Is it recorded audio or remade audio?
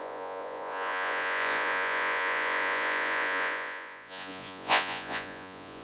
remade